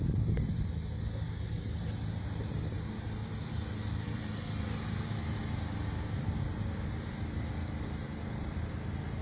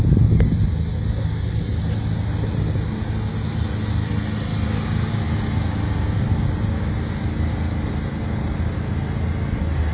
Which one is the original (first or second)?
second